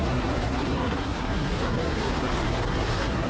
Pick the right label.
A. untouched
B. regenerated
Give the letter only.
B